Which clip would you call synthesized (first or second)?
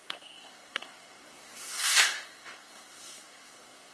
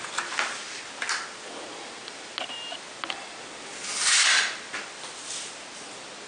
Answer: first